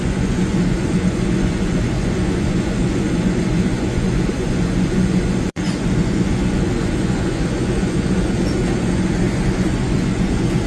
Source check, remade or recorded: remade